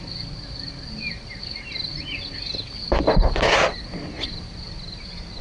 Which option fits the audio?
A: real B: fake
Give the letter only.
A